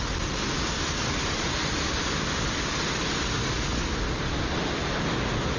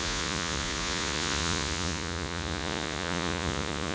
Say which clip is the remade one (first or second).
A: second